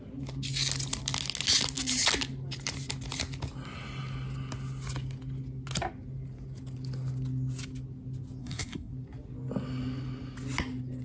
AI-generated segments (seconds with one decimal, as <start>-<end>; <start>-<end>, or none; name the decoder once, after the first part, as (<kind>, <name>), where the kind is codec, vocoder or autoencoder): 8.4-8.9 (codec, SNAC)